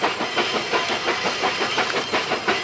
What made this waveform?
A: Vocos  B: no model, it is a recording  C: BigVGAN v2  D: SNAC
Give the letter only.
B